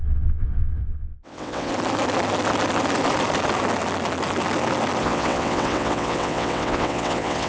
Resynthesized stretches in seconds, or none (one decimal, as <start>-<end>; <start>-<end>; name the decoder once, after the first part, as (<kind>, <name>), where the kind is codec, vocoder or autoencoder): 0.0-1.7 (vocoder, WaveNeXt); 5.0-7.5